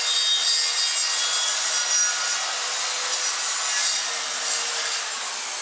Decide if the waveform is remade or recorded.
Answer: recorded